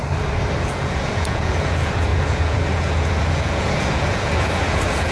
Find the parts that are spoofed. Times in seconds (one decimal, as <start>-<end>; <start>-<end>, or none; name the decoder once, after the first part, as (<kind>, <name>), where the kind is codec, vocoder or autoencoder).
0.6-5.1 (vocoder, Vocos)